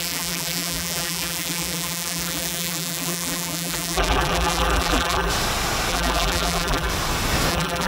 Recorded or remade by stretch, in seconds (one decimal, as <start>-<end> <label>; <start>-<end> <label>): 0.0-5.3 remade; 5.3-5.9 recorded; 5.9-6.9 remade; 6.9-7.5 recorded; 7.5-7.9 remade